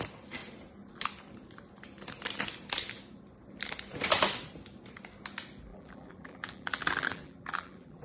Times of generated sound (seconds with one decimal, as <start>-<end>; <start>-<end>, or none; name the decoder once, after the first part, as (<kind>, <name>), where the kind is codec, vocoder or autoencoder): 5.7-8.0 (vocoder, BigVGAN v2)